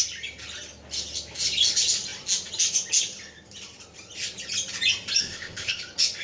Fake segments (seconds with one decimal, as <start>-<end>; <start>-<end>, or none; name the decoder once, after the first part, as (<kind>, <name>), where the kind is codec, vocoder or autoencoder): 5.2-5.8 (codec, ZipCodec)